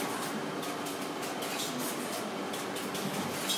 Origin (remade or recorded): recorded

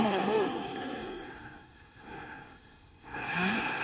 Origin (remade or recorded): remade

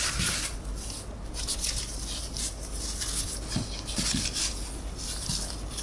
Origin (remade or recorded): recorded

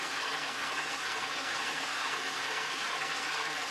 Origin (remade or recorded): remade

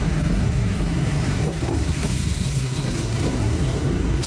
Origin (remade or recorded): remade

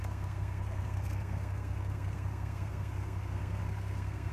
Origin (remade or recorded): remade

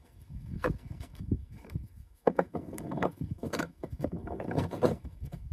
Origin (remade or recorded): remade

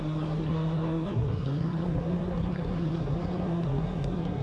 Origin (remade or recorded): remade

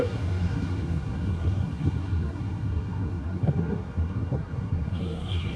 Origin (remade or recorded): remade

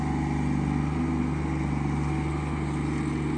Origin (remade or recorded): recorded